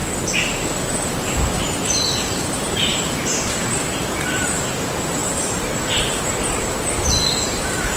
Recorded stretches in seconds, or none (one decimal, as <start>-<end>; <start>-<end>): 0.0-1.1